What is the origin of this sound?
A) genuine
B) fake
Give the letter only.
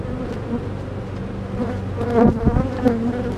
A